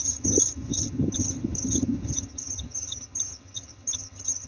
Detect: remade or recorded remade